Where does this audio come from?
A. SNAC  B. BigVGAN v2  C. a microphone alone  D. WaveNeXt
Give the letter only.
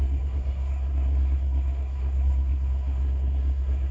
A